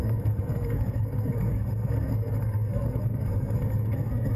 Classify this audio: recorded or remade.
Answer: remade